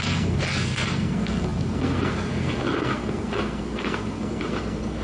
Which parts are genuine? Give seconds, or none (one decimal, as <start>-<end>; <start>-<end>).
none